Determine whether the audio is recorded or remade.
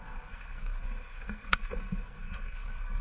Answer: remade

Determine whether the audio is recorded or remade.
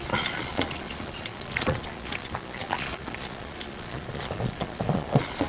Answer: remade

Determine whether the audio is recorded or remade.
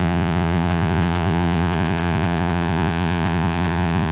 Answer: remade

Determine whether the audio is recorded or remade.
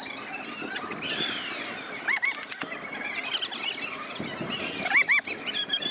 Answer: recorded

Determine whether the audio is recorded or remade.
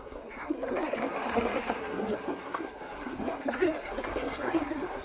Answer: remade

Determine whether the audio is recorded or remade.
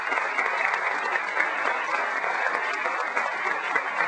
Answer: recorded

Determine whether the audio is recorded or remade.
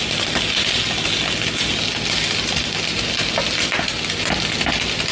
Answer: recorded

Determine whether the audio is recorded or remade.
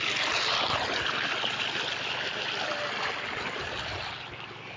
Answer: recorded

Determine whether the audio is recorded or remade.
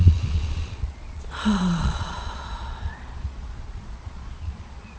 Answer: remade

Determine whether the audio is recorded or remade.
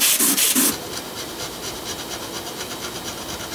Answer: recorded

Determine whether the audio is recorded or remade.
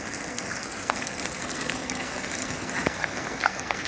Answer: remade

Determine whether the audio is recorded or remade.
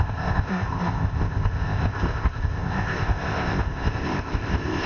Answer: remade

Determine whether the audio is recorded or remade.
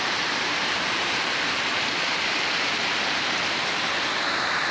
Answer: remade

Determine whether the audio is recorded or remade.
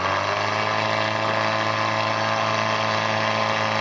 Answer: recorded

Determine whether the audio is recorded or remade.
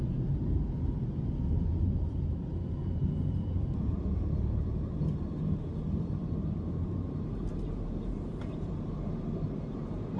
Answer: remade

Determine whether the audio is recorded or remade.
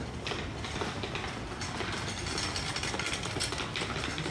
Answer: recorded